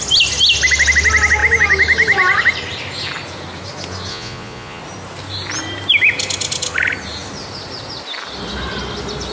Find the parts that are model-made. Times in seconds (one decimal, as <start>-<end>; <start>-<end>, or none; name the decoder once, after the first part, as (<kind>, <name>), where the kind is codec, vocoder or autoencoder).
4.1-4.8 (vocoder, Vocos)